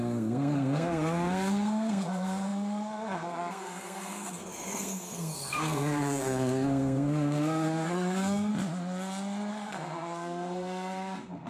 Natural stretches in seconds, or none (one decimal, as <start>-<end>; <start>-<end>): 8.5-9.5

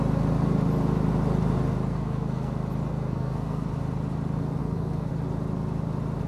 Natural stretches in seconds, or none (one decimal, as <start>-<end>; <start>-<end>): 0.0-1.9; 2.5-2.9; 3.7-4.6; 5.1-6.3

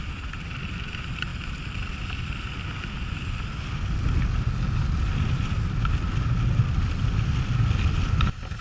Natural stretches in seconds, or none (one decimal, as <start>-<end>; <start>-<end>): 0.0-8.6

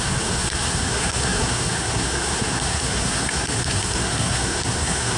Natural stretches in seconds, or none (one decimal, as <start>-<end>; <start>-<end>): none

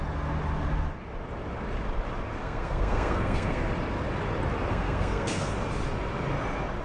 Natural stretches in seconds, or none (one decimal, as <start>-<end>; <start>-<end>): 0.0-2.4; 3.6-4.7; 5.5-6.8

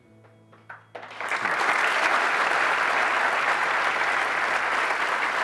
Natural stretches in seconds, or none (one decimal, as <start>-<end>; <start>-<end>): 0.0-5.4

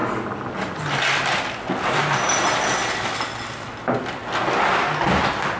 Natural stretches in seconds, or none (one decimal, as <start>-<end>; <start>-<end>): 0.0-5.6